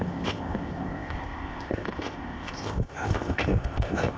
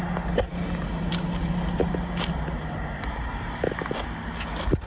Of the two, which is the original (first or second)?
second